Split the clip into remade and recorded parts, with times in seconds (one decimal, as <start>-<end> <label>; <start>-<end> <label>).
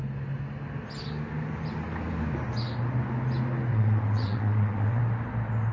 0.0-3.7 recorded; 3.7-5.0 remade; 5.0-5.7 recorded